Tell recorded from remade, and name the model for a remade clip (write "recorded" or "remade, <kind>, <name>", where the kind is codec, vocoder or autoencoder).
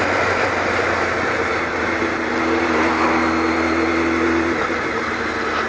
recorded